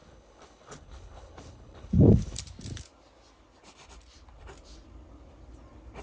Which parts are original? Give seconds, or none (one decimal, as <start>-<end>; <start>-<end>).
2.4-6.0